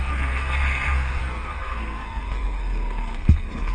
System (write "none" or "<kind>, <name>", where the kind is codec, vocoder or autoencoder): codec, SNAC